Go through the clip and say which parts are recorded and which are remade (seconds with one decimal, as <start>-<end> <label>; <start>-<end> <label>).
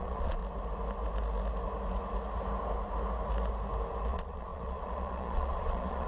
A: 0.0-0.4 remade; 0.4-4.1 recorded; 4.1-6.1 remade